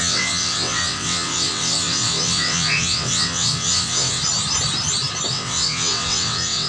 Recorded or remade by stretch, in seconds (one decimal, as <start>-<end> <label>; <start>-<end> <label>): 0.0-4.2 remade; 4.2-5.3 recorded; 5.3-6.7 remade